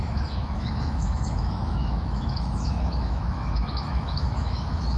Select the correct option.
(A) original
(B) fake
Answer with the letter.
B